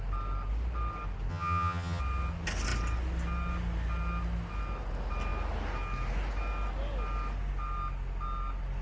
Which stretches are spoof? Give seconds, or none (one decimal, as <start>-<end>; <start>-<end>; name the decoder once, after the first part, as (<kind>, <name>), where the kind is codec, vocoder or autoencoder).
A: 1.3-2.0 (vocoder, HiFi-GAN)